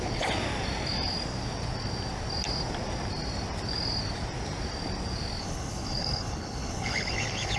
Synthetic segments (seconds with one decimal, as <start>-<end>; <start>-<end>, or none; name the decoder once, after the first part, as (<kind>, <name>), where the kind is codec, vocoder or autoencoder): 5.4-7.6 (codec, HILCodec)